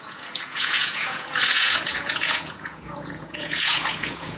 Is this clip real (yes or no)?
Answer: no